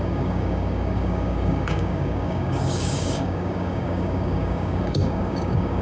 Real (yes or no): no